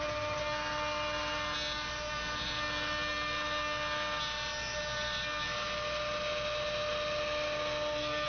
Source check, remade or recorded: recorded